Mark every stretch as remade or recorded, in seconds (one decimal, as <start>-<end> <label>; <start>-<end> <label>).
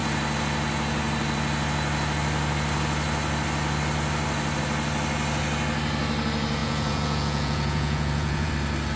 0.0-6.6 recorded; 6.6-8.5 remade; 8.5-9.0 recorded